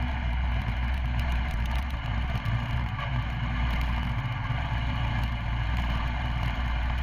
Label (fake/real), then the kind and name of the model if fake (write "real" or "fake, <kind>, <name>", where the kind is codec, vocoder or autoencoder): fake, vocoder, BigVGAN v2